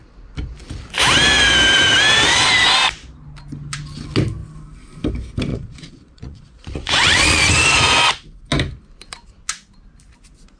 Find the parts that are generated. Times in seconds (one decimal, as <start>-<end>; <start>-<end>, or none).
5.5-7.5